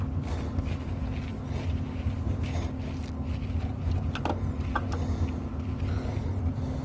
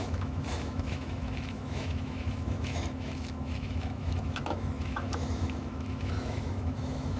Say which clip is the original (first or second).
first